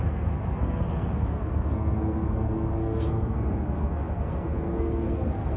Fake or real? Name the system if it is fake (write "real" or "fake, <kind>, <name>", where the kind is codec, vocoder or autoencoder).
fake, codec, SNAC